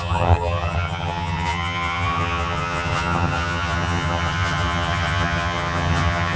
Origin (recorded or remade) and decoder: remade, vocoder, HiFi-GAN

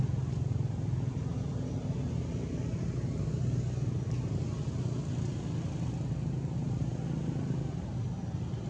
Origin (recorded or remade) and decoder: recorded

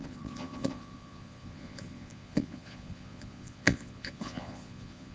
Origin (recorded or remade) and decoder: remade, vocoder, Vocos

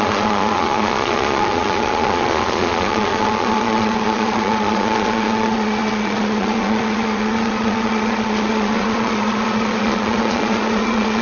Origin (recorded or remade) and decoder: remade, vocoder, Vocos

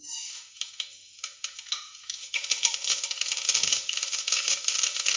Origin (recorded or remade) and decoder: remade, autoencoder, DAC-VAE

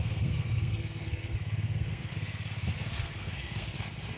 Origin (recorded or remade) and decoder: remade, codec, SNAC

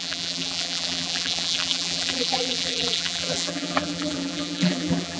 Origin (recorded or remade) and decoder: remade, vocoder, BigVGAN v2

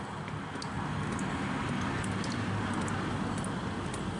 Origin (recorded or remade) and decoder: recorded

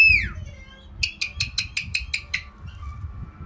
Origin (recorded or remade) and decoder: recorded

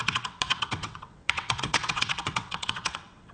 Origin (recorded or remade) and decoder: remade, vocoder, WaveNeXt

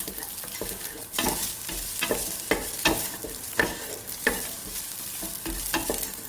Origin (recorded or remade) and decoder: recorded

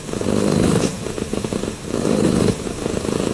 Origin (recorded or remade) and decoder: remade, autoencoder, DAC-VAE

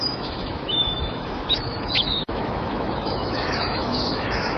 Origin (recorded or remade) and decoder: remade, autoencoder, DAC-VAE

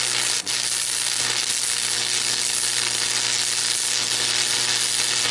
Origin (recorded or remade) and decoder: recorded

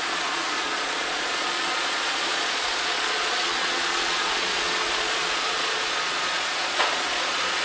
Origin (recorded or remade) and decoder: remade, vocoder, Vocos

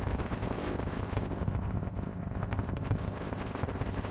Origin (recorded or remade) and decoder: remade, codec, ZipCodec